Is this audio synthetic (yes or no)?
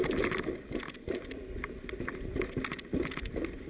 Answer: no